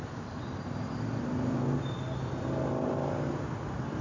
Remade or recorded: recorded